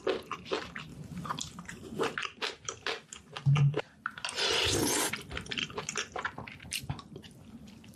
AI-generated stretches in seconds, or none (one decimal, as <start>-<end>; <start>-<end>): 0.9-1.4; 2.2-2.9